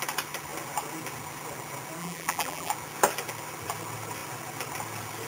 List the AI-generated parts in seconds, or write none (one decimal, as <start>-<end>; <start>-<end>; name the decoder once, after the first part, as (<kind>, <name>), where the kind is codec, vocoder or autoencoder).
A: 2.0-2.7 (vocoder, BigVGAN v2)

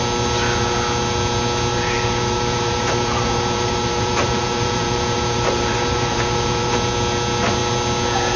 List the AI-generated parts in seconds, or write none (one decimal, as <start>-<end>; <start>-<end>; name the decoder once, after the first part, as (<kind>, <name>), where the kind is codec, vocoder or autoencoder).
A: 1.7-6.7 (vocoder, BigVGAN v2)

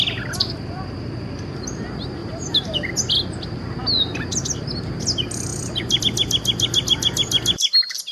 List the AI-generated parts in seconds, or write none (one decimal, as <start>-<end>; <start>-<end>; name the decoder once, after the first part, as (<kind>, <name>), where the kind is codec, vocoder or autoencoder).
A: 2.2-2.9 (vocoder, BigVGAN v2); 5.5-6.0